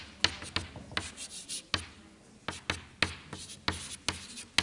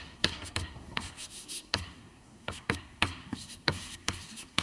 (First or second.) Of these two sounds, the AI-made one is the second